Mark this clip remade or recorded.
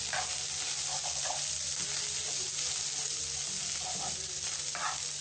recorded